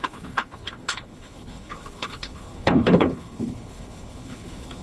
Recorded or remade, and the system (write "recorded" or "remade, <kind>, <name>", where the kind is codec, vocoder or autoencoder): remade, codec, HILCodec